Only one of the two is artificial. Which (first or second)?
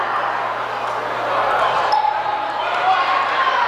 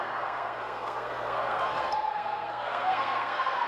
second